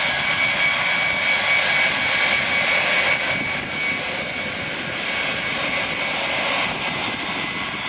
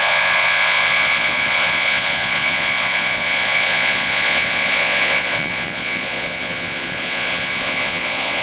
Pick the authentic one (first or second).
first